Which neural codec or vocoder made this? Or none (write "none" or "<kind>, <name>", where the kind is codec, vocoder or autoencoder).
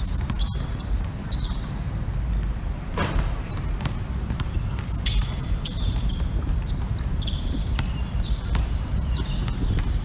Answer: vocoder, BigVGAN v2